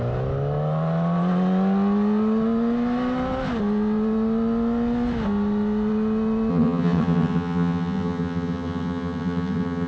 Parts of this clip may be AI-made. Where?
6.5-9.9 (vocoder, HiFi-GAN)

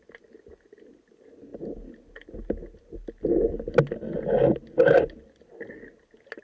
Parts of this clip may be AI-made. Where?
none

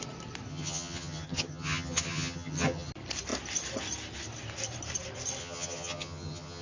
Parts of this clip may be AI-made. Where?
0.5-2.9 (vocoder, HiFi-GAN); 5.4-6.6

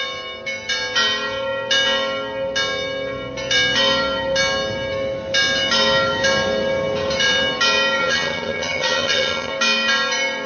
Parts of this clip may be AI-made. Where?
8.0-9.5 (vocoder, HiFi-GAN)

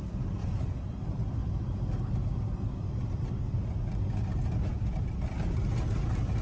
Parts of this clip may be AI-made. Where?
none